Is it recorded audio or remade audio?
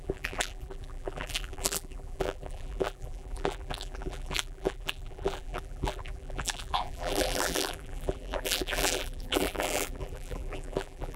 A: remade